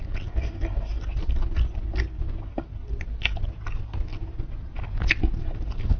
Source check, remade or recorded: recorded